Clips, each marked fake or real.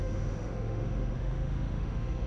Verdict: fake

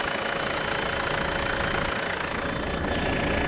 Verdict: real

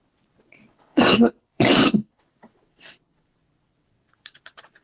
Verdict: fake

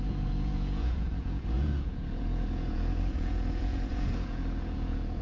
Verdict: fake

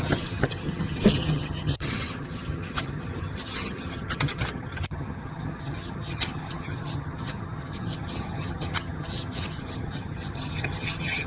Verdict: fake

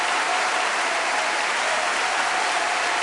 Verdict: fake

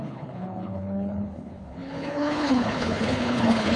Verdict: fake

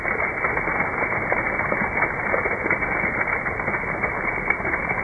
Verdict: real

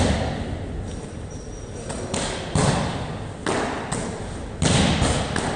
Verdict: real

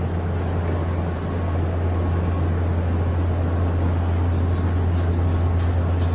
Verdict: real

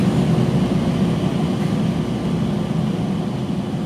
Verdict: real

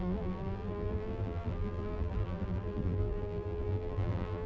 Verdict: fake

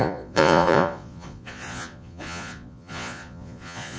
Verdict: fake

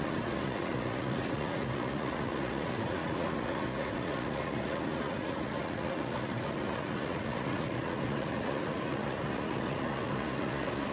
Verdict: fake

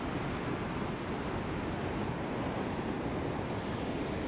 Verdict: real